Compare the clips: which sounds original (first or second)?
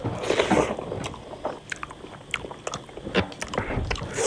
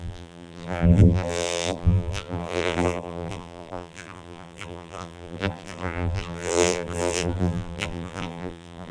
first